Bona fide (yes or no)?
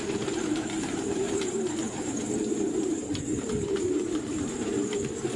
no